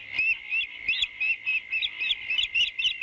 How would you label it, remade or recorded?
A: recorded